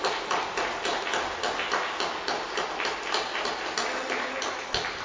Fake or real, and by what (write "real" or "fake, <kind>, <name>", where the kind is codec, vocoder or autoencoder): real